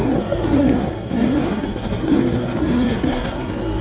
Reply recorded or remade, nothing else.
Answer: remade